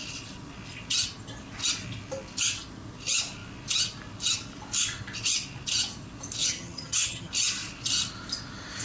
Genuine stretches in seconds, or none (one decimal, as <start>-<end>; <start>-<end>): 0.0-6.4; 7.3-8.8

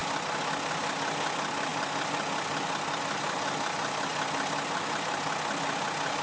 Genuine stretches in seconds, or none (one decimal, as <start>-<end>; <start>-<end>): 0.0-6.2

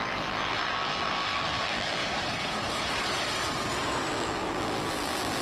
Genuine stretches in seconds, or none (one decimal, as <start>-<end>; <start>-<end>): 2.0-4.1